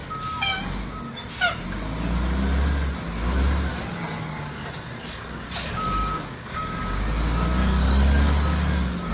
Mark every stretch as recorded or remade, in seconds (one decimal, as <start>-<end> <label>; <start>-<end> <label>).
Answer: 0.0-3.7 recorded; 3.7-6.8 remade; 6.8-7.6 recorded; 7.6-9.1 remade

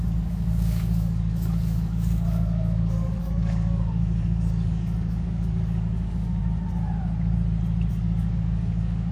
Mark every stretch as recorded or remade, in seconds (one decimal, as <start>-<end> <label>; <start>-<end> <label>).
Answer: 0.0-6.4 remade; 6.4-7.9 recorded; 7.9-9.1 remade